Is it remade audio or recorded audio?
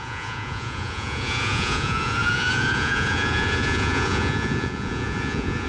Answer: remade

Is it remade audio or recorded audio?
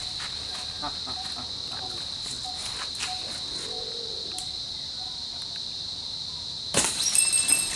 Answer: recorded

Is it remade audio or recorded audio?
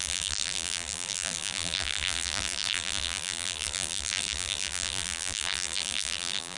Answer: remade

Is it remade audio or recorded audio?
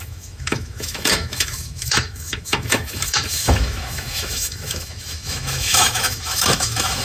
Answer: remade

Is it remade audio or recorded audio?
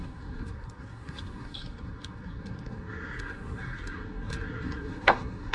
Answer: remade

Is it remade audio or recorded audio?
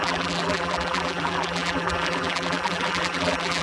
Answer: remade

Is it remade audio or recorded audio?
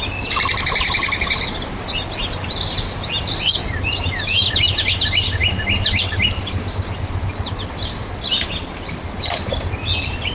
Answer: recorded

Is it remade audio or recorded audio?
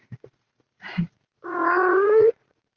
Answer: remade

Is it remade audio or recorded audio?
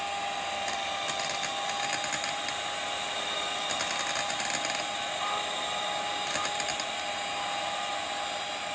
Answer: recorded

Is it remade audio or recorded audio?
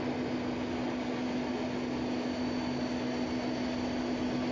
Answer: recorded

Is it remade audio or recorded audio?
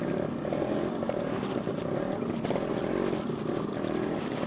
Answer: recorded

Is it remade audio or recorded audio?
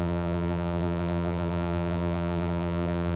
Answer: remade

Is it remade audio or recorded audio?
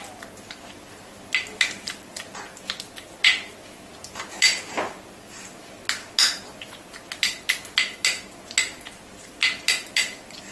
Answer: recorded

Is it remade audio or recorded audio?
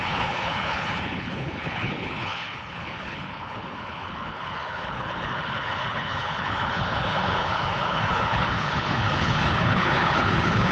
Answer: remade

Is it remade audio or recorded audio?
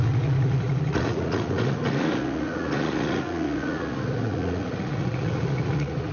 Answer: remade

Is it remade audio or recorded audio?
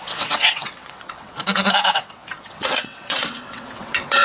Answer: remade